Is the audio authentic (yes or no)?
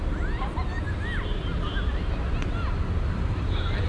yes